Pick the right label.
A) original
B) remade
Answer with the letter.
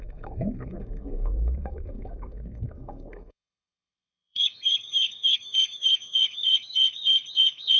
B